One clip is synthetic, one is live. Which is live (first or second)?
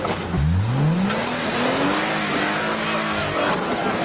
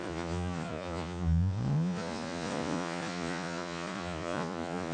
first